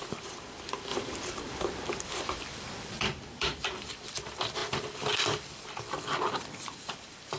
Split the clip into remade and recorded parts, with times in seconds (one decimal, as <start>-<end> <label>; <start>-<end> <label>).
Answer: 0.0-7.4 remade